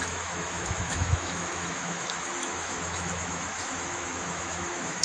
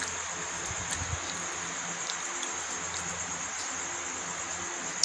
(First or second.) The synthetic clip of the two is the first